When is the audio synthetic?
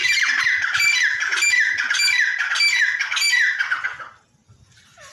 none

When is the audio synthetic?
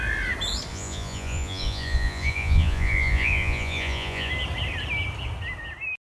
0.7-4.3